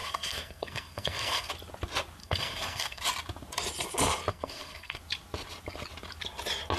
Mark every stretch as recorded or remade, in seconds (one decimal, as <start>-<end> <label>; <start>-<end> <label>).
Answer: 0.0-1.5 remade; 1.5-2.2 recorded; 2.2-3.0 remade; 3.0-4.3 recorded; 4.3-5.0 remade; 5.0-6.8 recorded